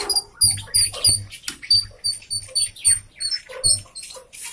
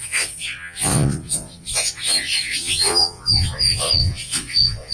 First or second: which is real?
first